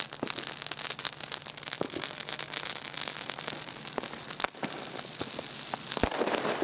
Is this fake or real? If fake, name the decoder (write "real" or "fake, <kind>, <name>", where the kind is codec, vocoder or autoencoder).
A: real